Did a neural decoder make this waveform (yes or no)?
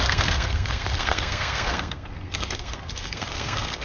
yes